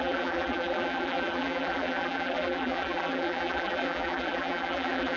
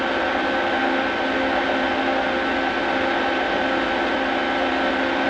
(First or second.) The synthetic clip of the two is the first